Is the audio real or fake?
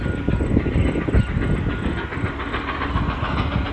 real